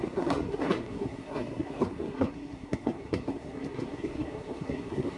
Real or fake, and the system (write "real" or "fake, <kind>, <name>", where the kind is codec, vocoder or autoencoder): fake, codec, SNAC